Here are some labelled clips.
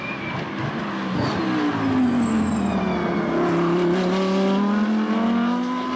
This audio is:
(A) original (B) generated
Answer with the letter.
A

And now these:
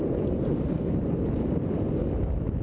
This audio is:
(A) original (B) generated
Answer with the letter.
A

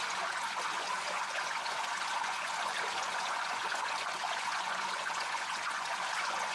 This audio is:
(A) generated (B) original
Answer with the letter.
A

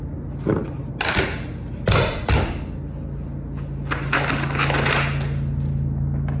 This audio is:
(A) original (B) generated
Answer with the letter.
A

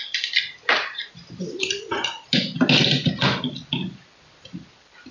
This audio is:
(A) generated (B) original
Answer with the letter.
B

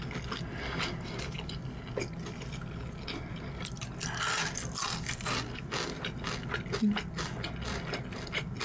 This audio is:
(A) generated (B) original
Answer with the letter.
B